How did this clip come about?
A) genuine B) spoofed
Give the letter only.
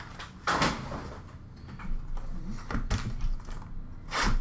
A